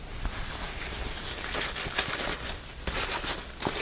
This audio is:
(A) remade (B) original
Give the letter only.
B